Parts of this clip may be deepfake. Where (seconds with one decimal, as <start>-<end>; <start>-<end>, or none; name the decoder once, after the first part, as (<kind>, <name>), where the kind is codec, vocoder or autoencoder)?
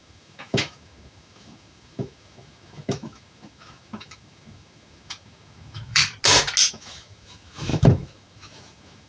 0.0-6.0 (autoencoder, DAC-VAE); 6.7-9.1